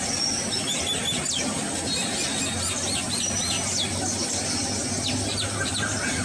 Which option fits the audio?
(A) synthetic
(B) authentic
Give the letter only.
B